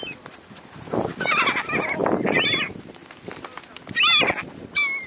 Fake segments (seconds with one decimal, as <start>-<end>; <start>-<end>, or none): none